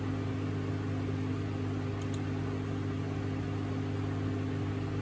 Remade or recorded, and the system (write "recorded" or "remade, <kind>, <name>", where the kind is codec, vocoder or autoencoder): recorded